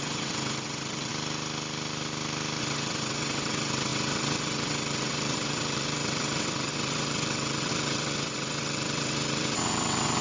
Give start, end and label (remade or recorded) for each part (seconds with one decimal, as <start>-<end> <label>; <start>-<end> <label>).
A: 0.0-1.1 remade; 1.1-2.6 recorded; 2.6-10.2 remade